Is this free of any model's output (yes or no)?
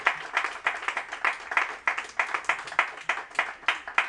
yes